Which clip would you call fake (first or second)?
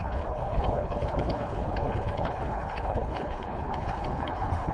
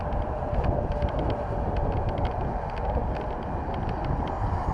first